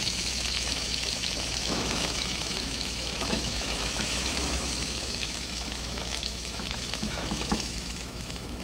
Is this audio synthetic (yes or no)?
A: yes